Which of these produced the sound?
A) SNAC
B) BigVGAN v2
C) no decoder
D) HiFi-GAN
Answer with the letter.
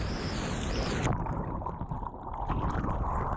C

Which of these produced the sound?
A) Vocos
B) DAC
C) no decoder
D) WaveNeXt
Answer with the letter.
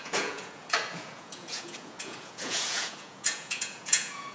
A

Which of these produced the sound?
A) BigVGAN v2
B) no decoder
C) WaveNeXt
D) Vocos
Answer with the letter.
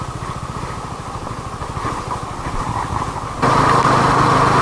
B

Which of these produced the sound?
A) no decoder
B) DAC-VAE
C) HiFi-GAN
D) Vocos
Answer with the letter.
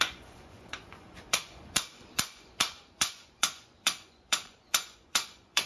D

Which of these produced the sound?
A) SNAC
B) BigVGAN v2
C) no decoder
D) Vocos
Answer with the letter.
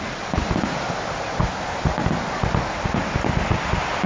C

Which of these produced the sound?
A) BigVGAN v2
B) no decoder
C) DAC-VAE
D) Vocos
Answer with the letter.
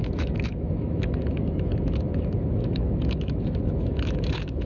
C